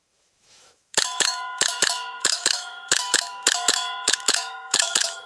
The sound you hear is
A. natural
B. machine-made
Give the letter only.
B